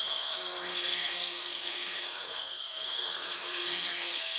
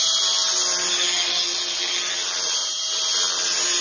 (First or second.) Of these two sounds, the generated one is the first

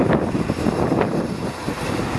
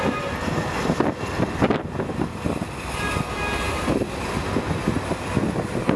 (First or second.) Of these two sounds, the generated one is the first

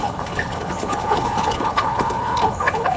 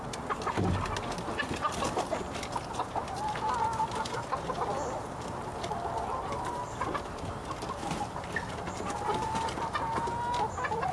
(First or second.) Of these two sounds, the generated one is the first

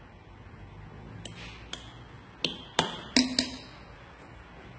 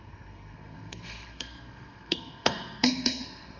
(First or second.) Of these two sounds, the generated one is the second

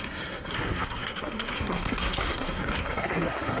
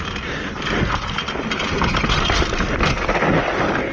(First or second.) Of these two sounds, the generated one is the first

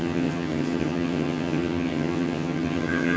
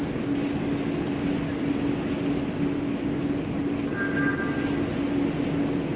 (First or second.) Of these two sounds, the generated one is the first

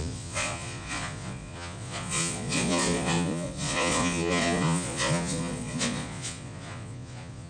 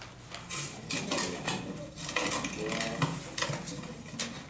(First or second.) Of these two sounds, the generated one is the first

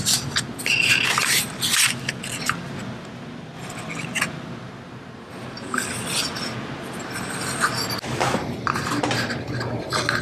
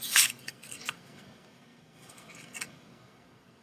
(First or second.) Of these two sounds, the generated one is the second